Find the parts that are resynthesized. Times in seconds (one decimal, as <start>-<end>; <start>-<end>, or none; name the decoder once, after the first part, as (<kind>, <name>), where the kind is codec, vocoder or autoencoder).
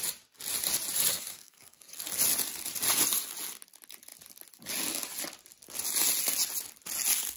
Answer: 1.1-1.9 (codec, SNAC)